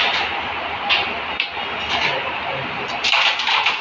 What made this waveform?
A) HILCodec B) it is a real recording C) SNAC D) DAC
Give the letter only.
B